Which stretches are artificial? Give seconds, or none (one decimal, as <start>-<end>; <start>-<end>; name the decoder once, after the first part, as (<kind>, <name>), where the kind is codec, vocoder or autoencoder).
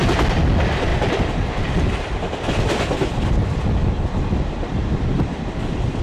none